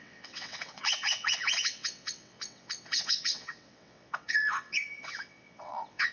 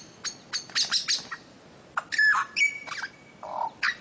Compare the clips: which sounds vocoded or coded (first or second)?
first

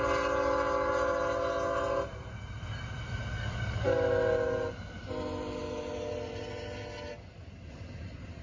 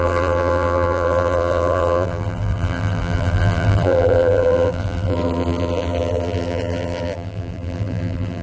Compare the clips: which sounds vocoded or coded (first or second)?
second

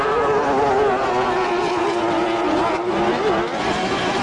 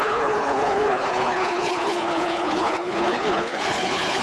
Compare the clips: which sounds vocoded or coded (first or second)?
second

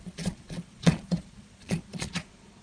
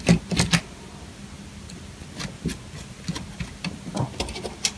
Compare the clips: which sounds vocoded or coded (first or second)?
first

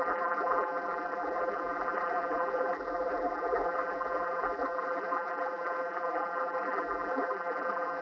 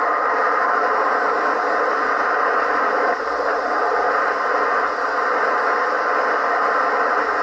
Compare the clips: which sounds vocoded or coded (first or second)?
first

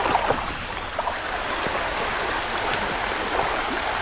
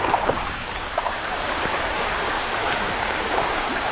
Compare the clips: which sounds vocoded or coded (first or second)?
second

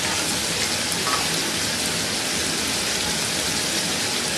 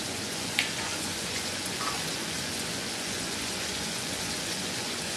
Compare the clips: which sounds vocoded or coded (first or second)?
second